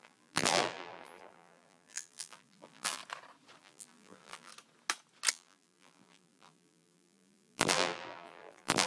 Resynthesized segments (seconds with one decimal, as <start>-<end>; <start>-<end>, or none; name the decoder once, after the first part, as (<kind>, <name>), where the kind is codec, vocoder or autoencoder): 0.0-3.0 (vocoder, BigVGAN v2); 3.6-4.5; 5.3-8.9